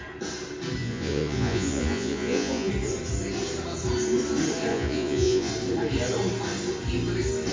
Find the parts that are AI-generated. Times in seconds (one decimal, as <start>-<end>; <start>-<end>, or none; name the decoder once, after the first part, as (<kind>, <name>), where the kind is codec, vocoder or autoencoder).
0.8-2.7 (vocoder, Vocos); 4.7-5.5